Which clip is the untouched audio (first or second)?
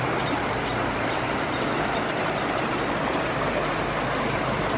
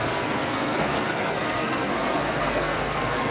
first